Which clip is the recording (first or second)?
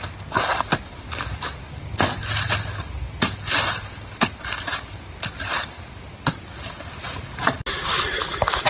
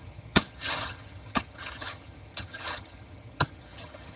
first